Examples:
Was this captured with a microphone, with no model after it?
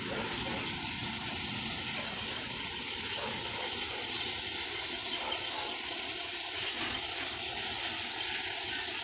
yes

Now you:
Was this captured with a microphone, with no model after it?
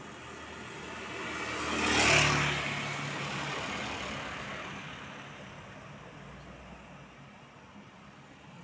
yes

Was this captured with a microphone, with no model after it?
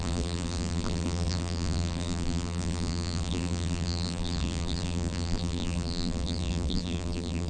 no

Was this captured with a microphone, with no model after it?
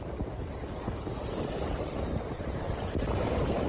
no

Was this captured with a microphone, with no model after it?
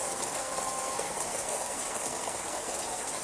no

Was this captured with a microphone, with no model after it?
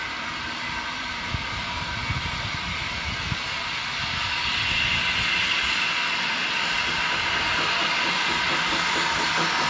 yes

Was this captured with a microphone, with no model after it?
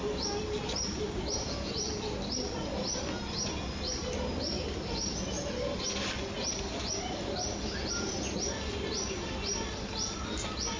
yes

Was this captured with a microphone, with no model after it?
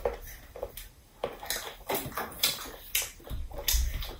yes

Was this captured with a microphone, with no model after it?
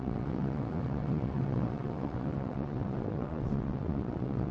no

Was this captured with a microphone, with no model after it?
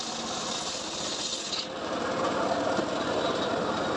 yes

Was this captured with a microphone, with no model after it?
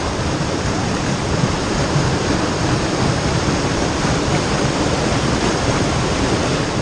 yes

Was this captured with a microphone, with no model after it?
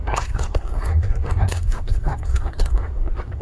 no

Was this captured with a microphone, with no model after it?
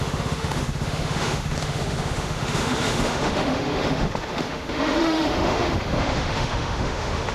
no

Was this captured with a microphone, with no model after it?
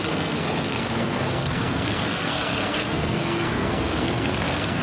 no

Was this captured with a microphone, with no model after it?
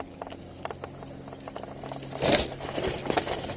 yes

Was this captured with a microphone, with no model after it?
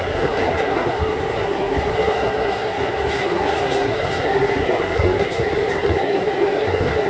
no